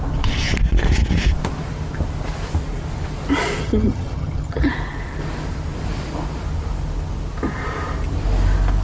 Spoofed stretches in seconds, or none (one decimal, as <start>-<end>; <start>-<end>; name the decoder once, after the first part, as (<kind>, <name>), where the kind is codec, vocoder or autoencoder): 3.6-4.7 (vocoder, HiFi-GAN)